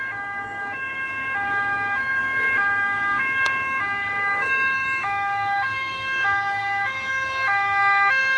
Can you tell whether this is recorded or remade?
remade